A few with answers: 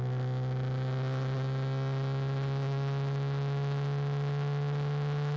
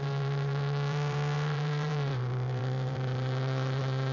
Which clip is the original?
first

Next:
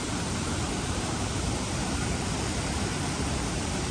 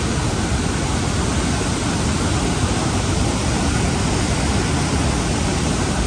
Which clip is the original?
second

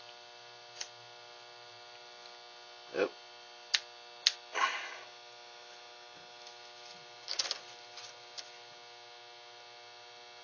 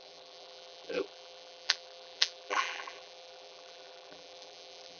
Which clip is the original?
first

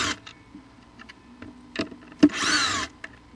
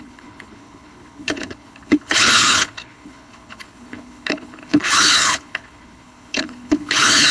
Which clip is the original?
first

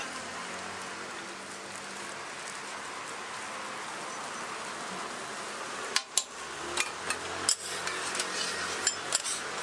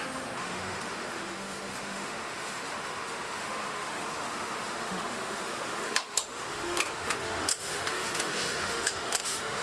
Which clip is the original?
first